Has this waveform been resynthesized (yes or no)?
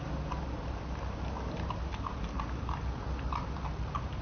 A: no